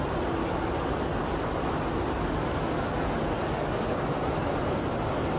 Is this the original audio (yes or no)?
yes